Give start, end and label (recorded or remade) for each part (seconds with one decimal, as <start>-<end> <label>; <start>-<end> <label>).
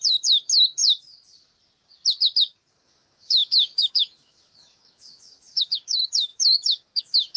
0.0-0.8 remade; 0.8-2.7 recorded; 2.7-7.4 remade